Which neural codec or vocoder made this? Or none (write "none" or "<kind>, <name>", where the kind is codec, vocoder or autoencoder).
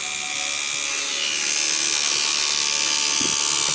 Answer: none